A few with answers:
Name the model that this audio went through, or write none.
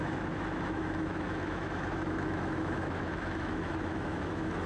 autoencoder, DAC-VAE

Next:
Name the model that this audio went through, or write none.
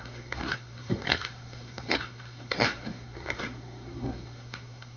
codec, SNAC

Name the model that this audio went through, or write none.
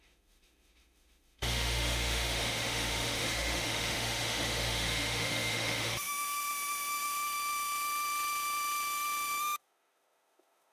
autoencoder, DAC-VAE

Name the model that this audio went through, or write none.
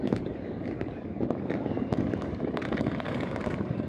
codec, DAC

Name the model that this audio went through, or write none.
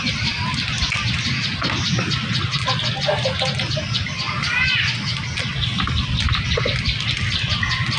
none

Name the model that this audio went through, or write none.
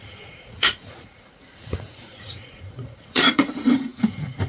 vocoder, Vocos